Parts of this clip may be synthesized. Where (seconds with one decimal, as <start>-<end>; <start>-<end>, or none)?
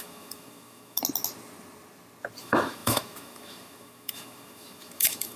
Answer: 0.0-1.0; 2.4-5.4